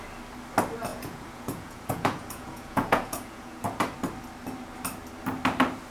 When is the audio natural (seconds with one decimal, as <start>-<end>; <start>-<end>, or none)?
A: 0.0-0.9; 3.6-5.9